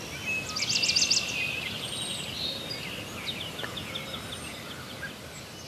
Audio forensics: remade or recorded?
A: recorded